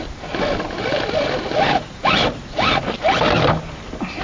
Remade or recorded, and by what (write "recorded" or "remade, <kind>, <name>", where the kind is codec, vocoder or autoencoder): recorded